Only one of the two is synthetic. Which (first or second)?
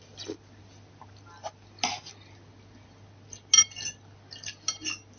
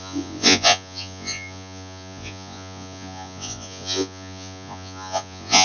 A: second